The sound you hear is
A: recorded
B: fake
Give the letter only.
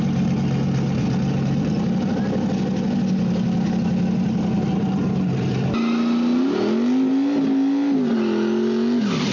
A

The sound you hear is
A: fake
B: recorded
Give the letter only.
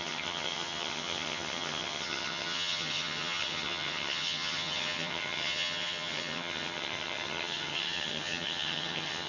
A